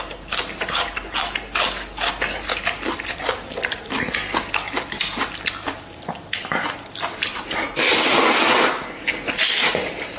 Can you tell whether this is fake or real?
real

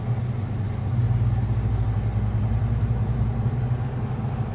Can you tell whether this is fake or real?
real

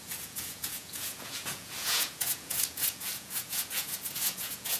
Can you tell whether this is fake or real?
fake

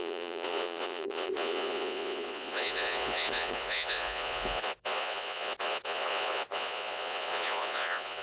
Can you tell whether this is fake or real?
fake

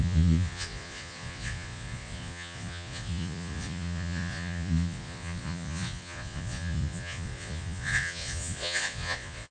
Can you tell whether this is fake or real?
fake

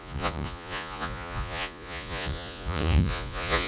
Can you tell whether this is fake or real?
fake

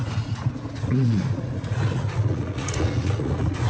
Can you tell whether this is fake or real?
fake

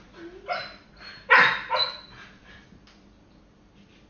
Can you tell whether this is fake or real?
real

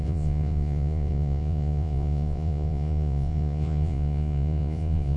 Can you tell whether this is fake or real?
fake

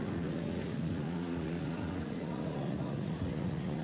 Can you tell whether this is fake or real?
fake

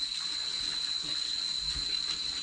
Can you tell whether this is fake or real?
real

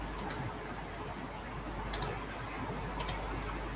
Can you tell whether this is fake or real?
real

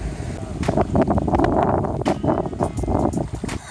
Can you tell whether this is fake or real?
real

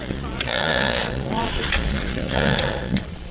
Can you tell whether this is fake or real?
fake